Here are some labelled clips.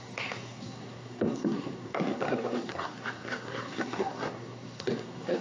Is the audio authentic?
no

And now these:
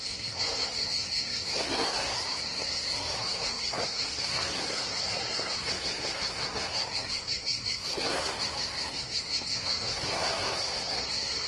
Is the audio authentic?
no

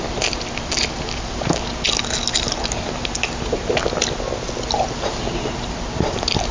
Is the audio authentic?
yes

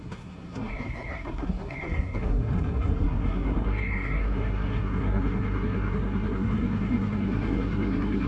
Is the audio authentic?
no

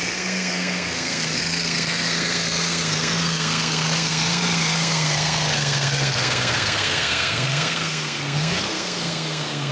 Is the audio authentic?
no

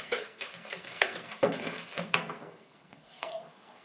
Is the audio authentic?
no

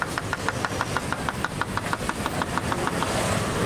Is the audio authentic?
yes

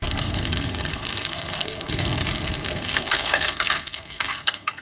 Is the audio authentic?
no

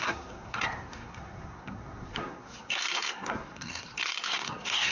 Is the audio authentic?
no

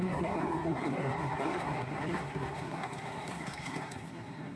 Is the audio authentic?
no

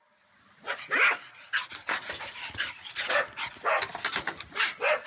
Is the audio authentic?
yes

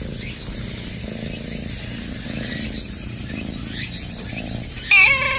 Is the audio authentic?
yes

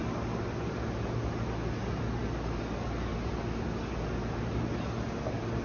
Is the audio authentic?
yes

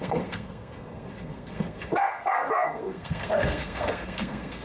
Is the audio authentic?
no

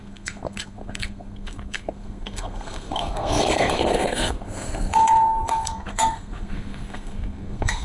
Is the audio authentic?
no